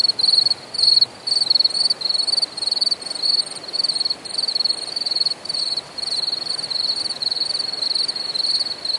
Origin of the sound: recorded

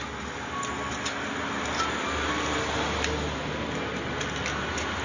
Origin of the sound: recorded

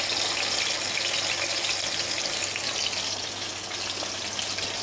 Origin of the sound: recorded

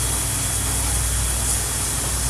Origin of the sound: recorded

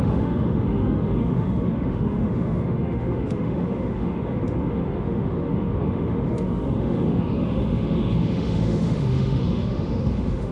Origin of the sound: remade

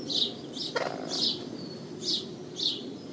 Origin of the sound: recorded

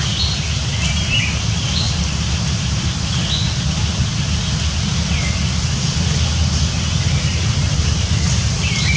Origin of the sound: recorded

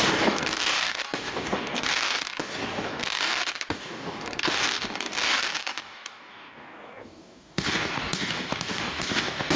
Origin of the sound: remade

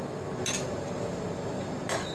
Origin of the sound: recorded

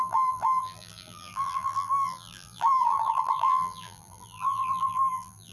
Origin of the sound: remade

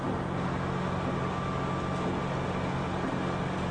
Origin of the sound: recorded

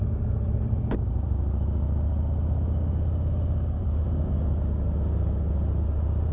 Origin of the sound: recorded